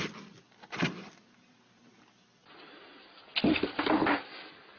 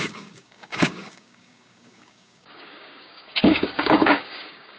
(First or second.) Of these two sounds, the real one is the first